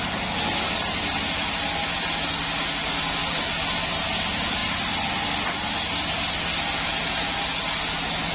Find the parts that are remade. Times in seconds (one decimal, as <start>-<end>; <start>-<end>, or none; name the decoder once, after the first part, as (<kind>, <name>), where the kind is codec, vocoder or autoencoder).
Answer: none